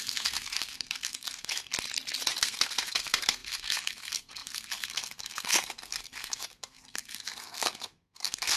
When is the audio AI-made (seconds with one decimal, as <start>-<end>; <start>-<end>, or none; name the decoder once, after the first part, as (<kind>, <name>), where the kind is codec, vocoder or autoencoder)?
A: 0.0-1.7 (codec, SNAC); 2.4-8.6

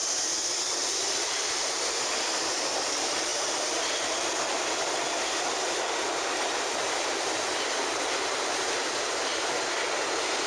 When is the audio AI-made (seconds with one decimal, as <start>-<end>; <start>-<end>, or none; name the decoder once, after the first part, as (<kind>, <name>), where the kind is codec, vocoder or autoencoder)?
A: 0.0-10.5 (vocoder, BigVGAN v2)

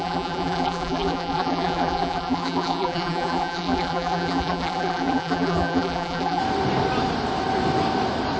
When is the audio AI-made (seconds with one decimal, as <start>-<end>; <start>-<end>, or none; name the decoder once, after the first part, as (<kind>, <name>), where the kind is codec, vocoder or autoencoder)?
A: 0.0-6.4 (vocoder, BigVGAN v2)

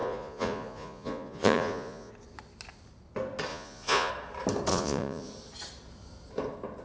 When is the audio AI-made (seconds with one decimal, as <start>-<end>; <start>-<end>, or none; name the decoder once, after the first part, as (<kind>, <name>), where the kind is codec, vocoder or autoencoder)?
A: 0.0-2.1 (vocoder, Vocos); 3.5-4.1; 4.7-5.3

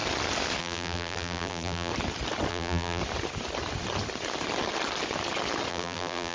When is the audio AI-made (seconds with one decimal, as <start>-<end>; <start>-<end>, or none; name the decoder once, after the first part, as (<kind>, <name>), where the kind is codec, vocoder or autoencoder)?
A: 0.6-1.9 (vocoder, BigVGAN v2); 2.5-3.0; 5.7-6.3

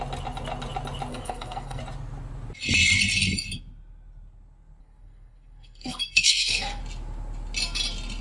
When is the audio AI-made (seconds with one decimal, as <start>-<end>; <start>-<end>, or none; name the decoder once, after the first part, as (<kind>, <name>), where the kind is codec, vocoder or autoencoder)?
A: 1.1-1.8 (codec, SNAC); 4.8-6.8